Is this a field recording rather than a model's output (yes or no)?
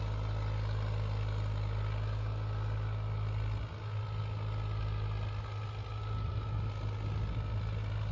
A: yes